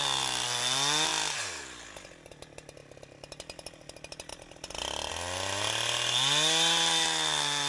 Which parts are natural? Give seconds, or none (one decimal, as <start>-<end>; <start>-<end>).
0.0-1.1; 2.3-4.3; 5.1-7.7